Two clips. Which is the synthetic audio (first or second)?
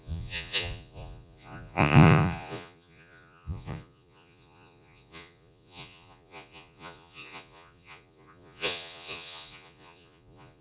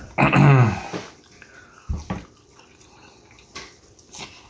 first